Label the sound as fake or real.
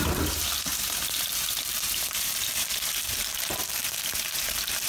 fake